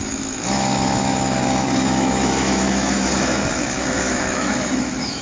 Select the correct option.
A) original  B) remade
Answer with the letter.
B